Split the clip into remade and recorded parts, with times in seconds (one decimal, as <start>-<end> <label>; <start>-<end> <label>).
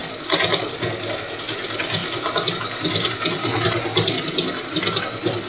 0.0-5.5 recorded